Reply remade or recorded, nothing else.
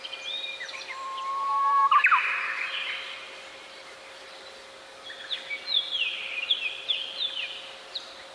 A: remade